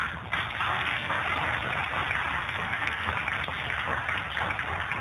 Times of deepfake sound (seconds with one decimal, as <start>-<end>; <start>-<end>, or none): 0.7-1.2; 2.4-3.1